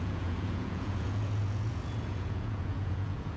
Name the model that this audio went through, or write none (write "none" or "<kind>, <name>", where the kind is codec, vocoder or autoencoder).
vocoder, Vocos